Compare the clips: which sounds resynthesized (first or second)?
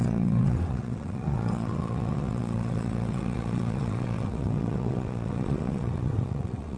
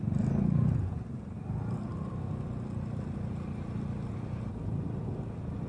first